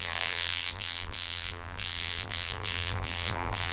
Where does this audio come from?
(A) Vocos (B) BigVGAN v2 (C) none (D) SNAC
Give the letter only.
B